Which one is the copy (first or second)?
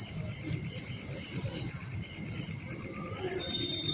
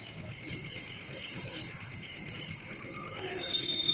second